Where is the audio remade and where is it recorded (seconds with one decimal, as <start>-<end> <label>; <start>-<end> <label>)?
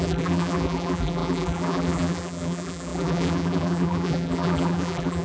0.0-5.2 remade